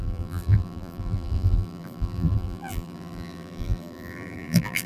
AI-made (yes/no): yes